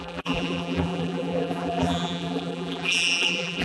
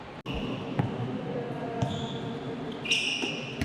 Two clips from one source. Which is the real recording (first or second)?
second